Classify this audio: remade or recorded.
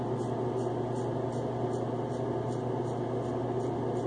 recorded